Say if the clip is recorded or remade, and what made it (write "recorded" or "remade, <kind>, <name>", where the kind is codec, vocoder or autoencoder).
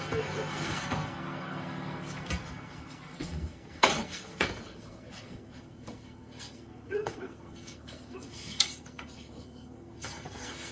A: remade, codec, SNAC